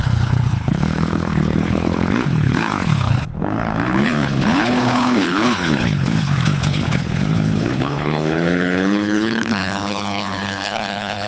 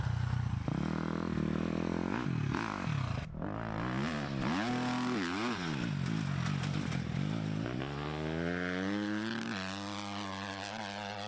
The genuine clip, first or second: second